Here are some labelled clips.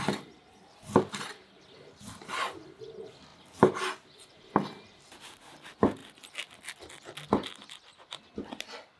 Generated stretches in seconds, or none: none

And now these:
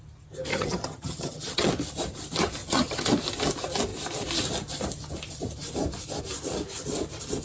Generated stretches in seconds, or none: 0.5-1.7 (vocoder, HiFi-GAN); 2.6-3.1

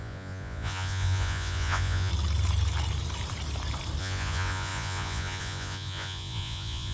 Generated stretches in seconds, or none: 0.0-2.1 (vocoder, Vocos); 4.0-6.9